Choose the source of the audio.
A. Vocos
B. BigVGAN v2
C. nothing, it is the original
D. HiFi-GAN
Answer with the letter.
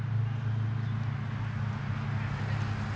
C